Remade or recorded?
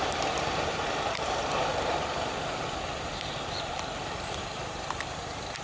remade